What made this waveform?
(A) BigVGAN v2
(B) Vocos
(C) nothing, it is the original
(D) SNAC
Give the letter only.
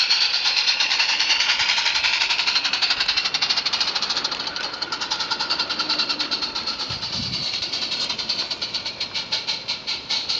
A